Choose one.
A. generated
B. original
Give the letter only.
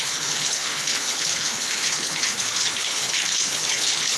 A